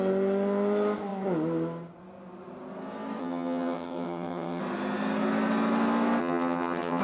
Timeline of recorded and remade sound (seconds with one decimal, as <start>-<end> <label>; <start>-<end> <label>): 0.0-3.2 recorded; 3.2-4.6 remade; 4.6-6.2 recorded; 6.2-7.0 remade